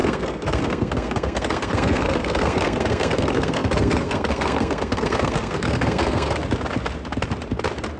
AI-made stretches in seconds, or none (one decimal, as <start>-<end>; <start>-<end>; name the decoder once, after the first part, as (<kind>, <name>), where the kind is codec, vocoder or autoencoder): 0.0-6.4 (codec, SNAC)